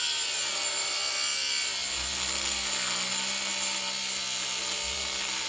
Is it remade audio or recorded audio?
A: recorded